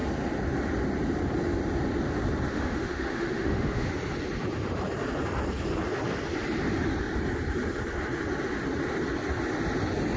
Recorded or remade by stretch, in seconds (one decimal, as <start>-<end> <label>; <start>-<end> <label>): 0.0-2.5 recorded; 2.5-3.9 remade; 3.9-10.2 recorded